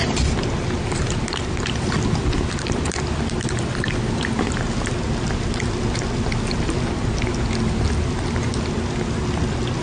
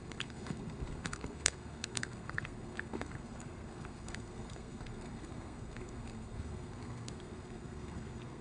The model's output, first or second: second